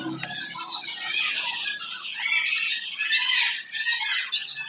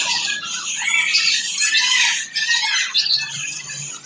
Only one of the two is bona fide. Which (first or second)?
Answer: first